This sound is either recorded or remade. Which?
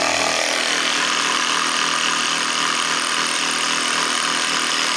recorded